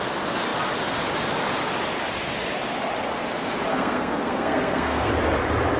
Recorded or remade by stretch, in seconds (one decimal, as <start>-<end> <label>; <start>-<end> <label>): 0.0-3.7 recorded; 3.7-5.1 remade; 5.1-5.8 recorded